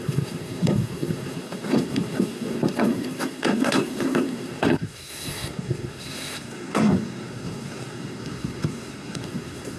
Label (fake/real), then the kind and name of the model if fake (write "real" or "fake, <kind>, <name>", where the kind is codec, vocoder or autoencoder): fake, codec, SNAC